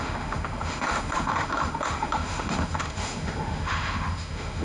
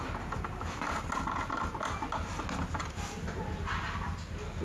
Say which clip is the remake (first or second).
first